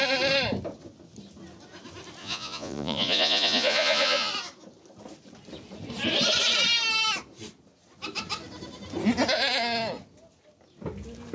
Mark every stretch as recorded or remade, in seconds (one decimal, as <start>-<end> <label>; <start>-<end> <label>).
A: 0.0-2.2 recorded; 2.2-4.3 remade; 4.3-11.3 recorded